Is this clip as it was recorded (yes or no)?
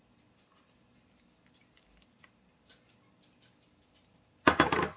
yes